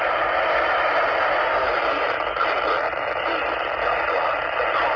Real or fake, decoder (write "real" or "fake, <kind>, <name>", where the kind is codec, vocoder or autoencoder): real